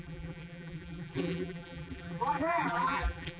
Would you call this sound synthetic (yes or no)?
yes